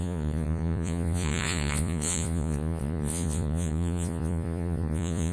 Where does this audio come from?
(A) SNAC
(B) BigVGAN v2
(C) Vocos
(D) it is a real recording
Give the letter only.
C